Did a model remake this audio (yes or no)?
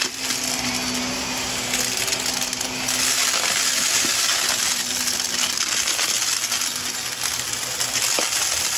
no